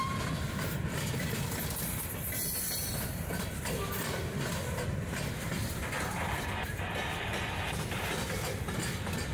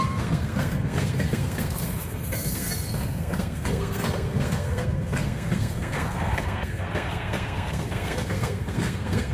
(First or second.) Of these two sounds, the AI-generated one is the second